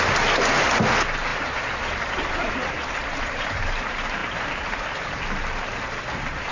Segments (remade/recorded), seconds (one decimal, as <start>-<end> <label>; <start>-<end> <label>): 0.0-1.3 recorded; 1.3-3.8 remade; 3.8-6.5 recorded